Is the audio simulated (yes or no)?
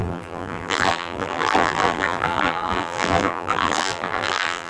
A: yes